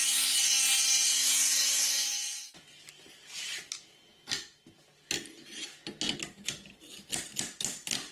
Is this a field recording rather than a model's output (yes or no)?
yes